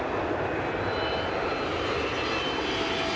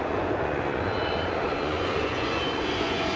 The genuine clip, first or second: first